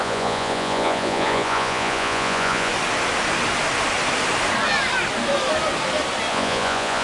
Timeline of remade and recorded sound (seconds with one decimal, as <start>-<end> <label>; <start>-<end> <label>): 0.0-2.7 remade; 2.7-6.3 recorded; 6.3-7.0 remade